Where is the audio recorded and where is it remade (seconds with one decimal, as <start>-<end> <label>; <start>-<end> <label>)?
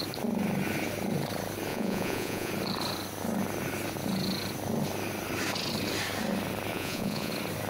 0.0-1.7 recorded; 1.7-2.5 remade; 2.5-6.7 recorded; 6.7-7.3 remade; 7.3-7.7 recorded